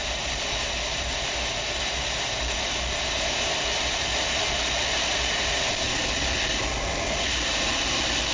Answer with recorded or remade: recorded